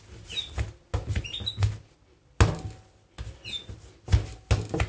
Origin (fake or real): real